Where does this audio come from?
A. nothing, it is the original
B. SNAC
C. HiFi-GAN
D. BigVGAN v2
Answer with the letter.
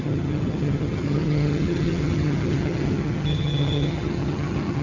C